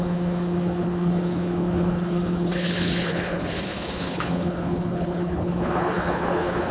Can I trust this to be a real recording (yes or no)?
no